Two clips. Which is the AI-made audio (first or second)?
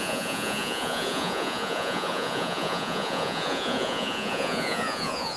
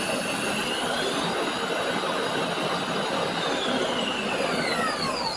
first